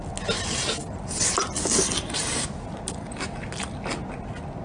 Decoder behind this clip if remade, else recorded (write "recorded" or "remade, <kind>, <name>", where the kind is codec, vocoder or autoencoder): recorded